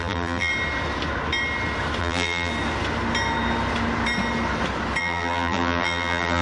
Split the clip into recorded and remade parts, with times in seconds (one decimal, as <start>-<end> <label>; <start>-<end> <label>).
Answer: 0.0-0.5 remade; 0.5-2.0 recorded; 2.0-2.5 remade; 2.5-5.0 recorded; 5.0-6.4 remade